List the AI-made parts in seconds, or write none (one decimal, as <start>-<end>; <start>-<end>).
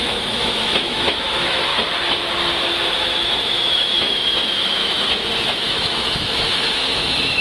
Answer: 0.0-1.7; 2.7-7.4